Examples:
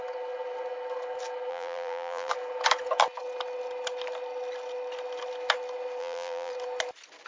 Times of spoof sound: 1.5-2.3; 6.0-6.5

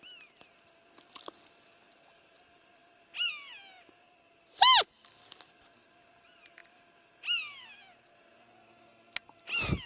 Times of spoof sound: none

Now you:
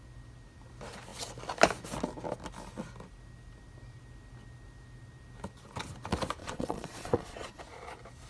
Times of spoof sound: 6.4-7.6